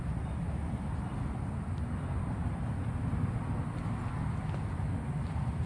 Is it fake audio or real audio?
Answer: real